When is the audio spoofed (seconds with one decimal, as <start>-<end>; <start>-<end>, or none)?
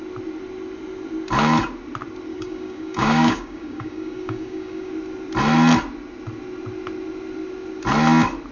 2.3-4.9